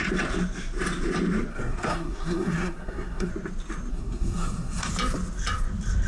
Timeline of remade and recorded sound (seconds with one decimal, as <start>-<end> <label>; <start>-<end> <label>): 0.0-1.5 recorded; 1.5-3.3 remade; 3.3-3.9 recorded; 3.9-4.9 remade; 4.9-6.1 recorded